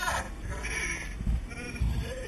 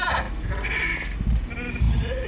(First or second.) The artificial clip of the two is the first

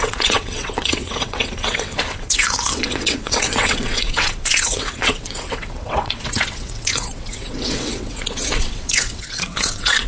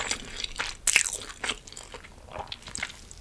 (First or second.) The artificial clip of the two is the first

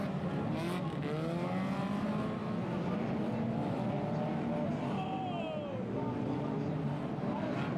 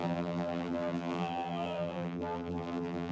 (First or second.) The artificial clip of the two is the second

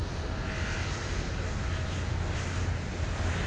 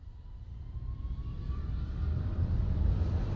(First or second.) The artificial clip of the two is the second